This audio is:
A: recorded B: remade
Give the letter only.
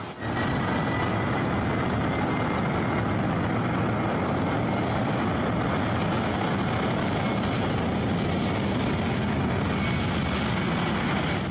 A